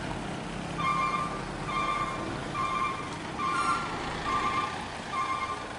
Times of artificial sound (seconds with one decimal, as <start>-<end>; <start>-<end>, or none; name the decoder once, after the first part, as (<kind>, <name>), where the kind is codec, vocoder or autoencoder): none

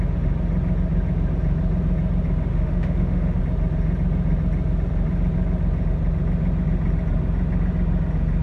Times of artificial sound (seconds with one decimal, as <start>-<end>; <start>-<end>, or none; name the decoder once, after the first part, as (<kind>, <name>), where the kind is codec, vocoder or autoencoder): 2.5-3.4 (autoencoder, DAC-VAE)

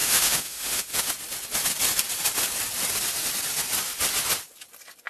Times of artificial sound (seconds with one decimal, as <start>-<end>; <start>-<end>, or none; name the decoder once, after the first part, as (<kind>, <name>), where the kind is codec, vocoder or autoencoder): 0.0-1.1 (autoencoder, DAC-VAE)

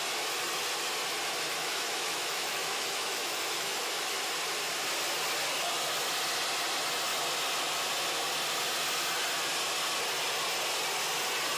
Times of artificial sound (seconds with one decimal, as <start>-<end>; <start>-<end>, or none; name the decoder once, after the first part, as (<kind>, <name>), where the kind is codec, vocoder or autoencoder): 1.5-4.2 (autoencoder, DAC-VAE)

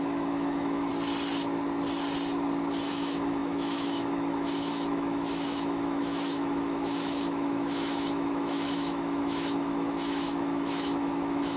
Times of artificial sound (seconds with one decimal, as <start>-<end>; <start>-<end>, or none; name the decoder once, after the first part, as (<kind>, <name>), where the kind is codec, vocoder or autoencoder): 0.0-0.9 (autoencoder, DAC-VAE); 2.9-11.6

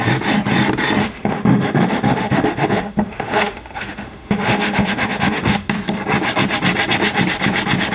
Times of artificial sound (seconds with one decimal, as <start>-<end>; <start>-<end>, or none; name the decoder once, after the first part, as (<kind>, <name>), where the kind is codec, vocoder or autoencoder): 1.0-5.7 (autoencoder, DAC-VAE)